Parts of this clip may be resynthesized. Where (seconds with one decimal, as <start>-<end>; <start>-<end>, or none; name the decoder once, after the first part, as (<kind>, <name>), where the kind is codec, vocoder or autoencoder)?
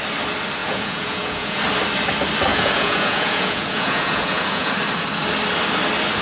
0.6-1.6 (vocoder, Vocos); 2.5-4.7